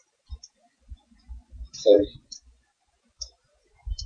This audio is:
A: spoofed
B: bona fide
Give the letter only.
A